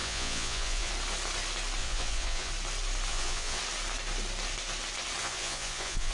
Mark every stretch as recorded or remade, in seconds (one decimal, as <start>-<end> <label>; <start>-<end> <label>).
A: 0.0-0.9 remade; 0.9-1.8 recorded; 1.8-2.5 remade; 2.5-3.1 recorded; 3.1-3.6 remade; 3.6-5.2 recorded; 5.2-6.1 remade